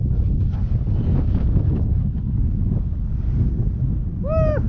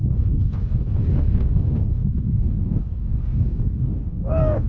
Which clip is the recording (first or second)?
first